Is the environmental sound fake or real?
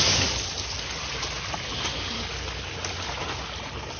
real